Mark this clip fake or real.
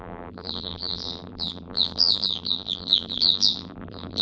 fake